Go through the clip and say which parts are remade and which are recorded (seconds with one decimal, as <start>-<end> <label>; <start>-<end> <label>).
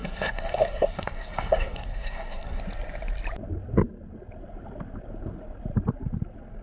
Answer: 0.0-2.6 remade; 2.6-6.6 recorded